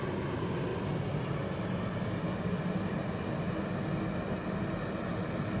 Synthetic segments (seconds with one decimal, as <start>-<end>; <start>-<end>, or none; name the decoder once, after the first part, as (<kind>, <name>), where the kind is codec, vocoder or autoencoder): none